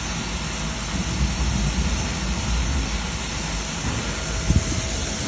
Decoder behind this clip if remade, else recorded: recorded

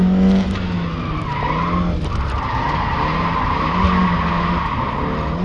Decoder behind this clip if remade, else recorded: recorded